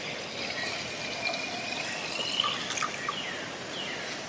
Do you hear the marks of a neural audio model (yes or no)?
no